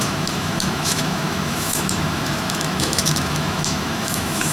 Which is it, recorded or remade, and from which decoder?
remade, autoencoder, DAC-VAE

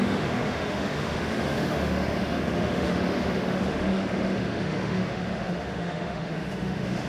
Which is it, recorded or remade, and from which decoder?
remade, autoencoder, DAC-VAE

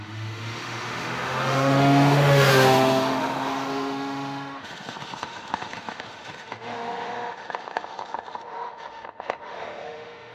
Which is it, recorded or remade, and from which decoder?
remade, autoencoder, DAC-VAE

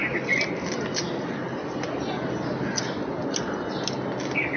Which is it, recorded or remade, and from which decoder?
recorded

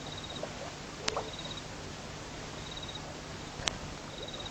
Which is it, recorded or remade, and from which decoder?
recorded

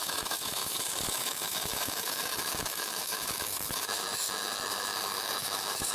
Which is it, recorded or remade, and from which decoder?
remade, autoencoder, DAC-VAE